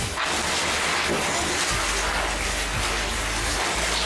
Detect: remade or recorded recorded